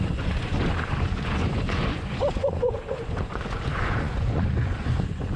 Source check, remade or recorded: remade